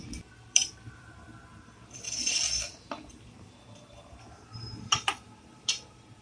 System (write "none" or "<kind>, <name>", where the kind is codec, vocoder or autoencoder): vocoder, BigVGAN v2